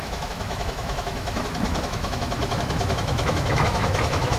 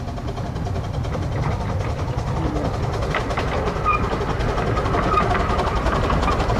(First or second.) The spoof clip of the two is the first